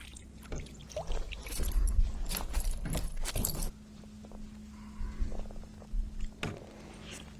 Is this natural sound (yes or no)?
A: yes